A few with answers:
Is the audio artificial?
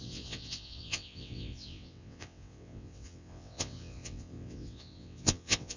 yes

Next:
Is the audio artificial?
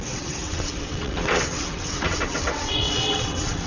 yes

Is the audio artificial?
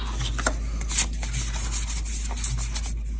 no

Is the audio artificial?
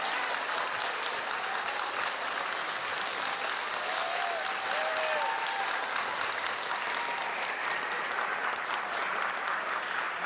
no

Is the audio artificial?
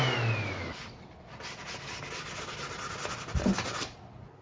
no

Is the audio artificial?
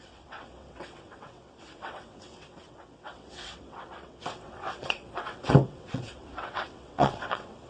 yes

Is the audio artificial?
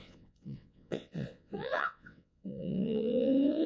yes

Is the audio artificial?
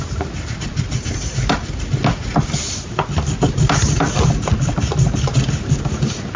no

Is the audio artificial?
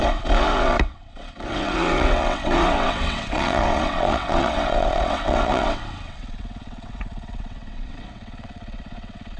yes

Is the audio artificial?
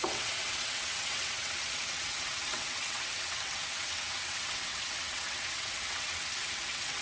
yes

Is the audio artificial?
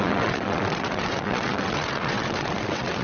yes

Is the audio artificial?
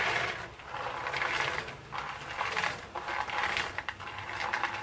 no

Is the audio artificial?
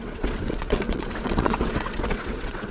yes